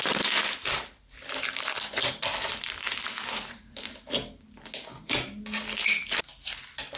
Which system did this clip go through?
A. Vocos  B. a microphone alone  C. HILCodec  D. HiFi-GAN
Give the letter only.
B